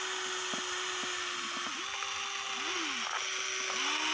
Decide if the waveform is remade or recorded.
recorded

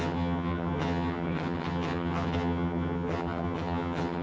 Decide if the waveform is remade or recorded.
remade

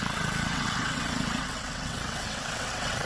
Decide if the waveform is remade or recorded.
remade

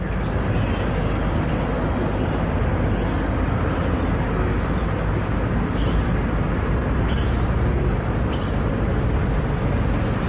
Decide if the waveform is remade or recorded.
recorded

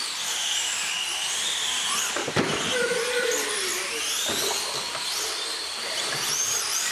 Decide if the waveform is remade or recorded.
recorded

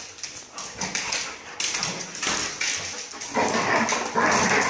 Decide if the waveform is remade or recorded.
recorded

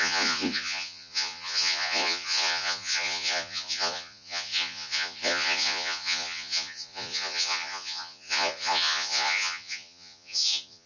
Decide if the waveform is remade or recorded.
remade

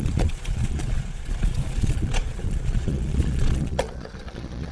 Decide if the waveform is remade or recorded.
remade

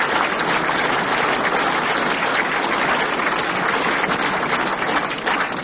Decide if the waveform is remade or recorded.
recorded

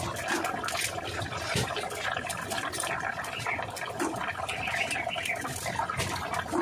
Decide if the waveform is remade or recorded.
recorded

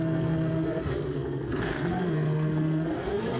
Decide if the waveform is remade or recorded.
remade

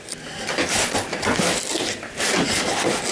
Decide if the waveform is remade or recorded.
recorded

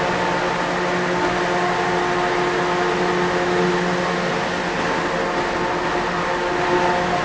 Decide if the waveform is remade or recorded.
recorded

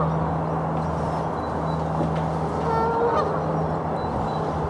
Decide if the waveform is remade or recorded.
recorded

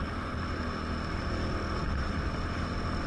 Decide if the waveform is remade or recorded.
recorded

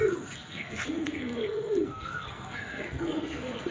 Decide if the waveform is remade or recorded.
remade